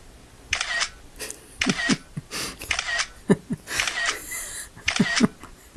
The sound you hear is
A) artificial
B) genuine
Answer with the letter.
B